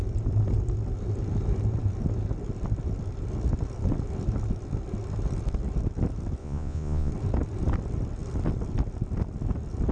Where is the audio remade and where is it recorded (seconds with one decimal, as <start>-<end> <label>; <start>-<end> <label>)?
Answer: 0.0-6.4 recorded; 6.4-7.1 remade; 7.1-9.9 recorded